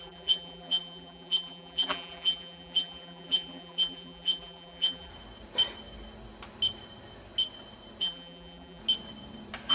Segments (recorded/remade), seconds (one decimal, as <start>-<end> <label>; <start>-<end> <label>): 0.0-5.1 remade; 5.1-8.0 recorded; 8.0-8.8 remade; 8.8-9.7 recorded